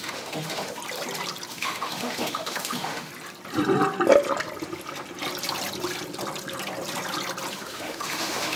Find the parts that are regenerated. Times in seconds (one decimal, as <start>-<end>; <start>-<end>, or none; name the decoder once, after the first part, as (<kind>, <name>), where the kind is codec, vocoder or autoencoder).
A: 0.0-0.8 (autoencoder, DAC-VAE); 1.5-3.1; 7.5-8.6